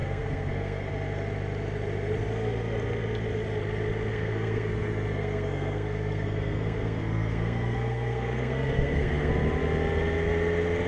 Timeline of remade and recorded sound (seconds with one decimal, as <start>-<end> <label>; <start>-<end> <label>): 0.0-0.9 remade; 0.9-4.1 recorded; 4.1-9.3 remade; 9.3-10.9 recorded